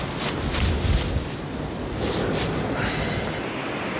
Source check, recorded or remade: recorded